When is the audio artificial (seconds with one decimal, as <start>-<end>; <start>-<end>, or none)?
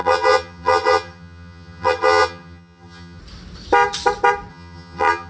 0.0-3.2; 4.5-5.3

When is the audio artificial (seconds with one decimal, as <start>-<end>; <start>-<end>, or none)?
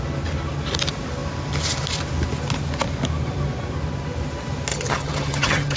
4.7-5.8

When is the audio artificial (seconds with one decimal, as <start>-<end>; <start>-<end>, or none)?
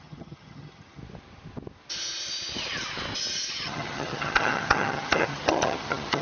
0.0-1.0; 3.5-6.2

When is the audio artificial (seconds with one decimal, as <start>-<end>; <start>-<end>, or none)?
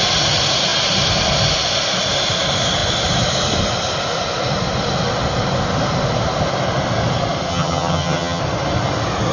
7.5-8.4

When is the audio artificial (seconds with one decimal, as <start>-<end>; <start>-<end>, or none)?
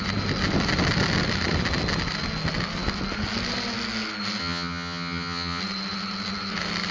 4.4-5.6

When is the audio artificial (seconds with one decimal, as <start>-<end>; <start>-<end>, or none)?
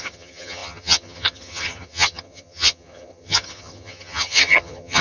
0.0-5.0